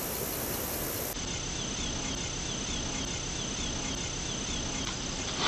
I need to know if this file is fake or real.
real